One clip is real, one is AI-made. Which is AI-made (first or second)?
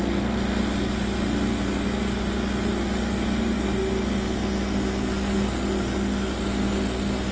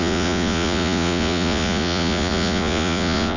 second